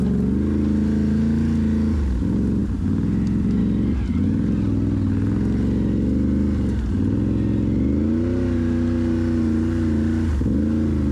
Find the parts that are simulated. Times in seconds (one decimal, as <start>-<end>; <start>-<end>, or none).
none